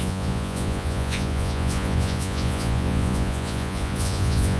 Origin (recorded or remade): remade